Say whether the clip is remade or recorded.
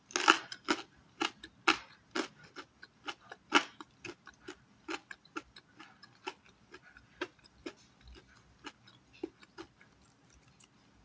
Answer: recorded